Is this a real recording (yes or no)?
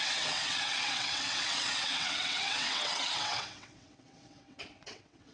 no